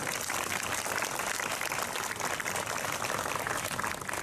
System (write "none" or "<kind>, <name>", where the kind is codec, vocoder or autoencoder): none